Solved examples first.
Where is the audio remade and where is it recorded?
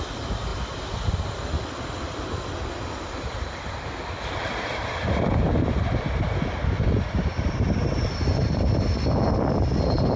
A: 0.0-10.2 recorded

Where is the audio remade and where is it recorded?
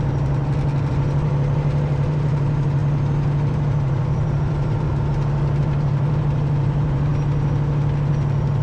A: 0.0-0.4 remade; 0.4-0.9 recorded; 0.9-2.8 remade; 2.8-3.5 recorded; 3.5-4.9 remade; 4.9-5.6 recorded; 5.6-7.1 remade; 7.1-8.1 recorded; 8.1-8.6 remade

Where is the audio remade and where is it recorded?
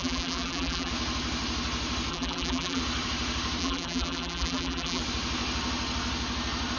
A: 0.0-0.9 remade; 0.9-2.1 recorded; 2.1-2.8 remade; 2.8-3.6 recorded; 3.6-5.0 remade; 5.0-6.8 recorded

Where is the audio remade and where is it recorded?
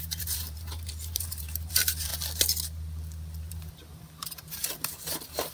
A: 0.0-2.1 remade; 2.1-3.5 recorded; 3.5-5.5 remade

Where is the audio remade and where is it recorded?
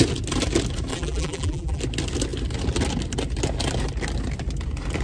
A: 0.0-0.9 recorded; 0.9-1.8 remade; 1.8-5.0 recorded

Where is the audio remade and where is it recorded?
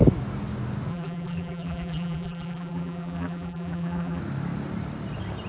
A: 0.0-0.9 recorded; 0.9-4.2 remade; 4.2-5.5 recorded